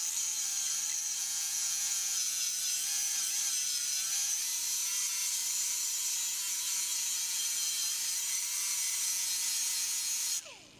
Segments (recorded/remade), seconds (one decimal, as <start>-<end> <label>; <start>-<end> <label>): 0.0-1.2 recorded; 1.2-2.6 remade; 2.6-10.8 recorded